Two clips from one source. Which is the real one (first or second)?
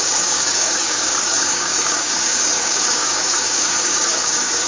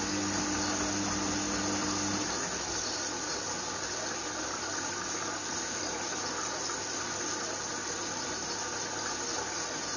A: second